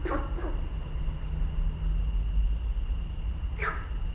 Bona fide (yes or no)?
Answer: yes